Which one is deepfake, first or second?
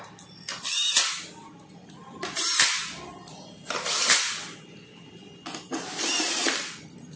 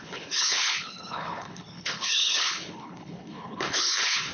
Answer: second